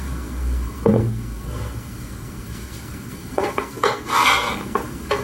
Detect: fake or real fake